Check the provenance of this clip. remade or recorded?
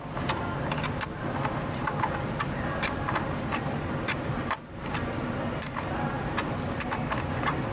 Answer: recorded